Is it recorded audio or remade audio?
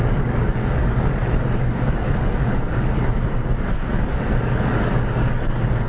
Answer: remade